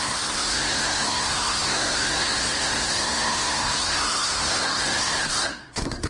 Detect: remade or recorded remade